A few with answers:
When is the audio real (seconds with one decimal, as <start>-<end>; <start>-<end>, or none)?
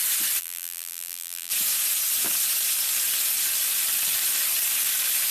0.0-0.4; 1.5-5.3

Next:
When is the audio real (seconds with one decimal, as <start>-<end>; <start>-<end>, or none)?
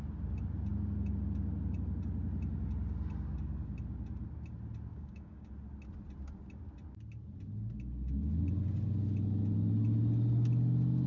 0.0-4.9; 5.5-11.1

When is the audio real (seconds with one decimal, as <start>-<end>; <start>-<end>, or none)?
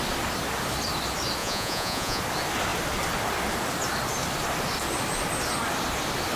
0.0-1.4; 2.2-6.4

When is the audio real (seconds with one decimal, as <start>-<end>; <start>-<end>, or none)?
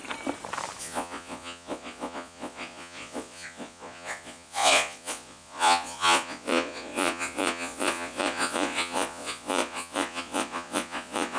0.0-0.8